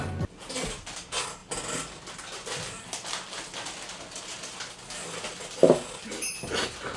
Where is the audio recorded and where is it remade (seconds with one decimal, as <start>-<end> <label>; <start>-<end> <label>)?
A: 0.0-7.0 recorded